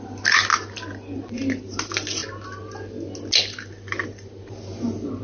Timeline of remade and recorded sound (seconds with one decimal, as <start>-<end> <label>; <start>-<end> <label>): 0.0-5.2 recorded